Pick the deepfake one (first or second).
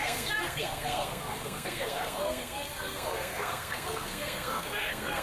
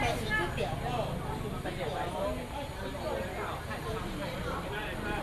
first